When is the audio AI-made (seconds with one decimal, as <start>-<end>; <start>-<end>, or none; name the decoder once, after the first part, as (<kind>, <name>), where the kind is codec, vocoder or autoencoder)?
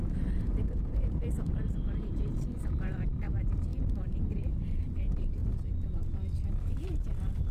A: 0.0-5.4 (vocoder, BigVGAN v2); 6.5-7.5